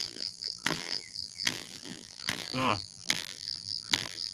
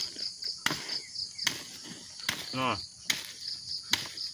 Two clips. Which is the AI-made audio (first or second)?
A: first